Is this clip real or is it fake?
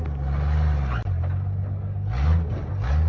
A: real